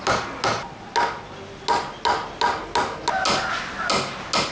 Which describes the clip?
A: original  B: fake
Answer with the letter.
A